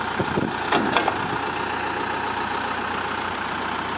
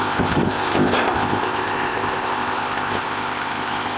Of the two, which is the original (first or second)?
first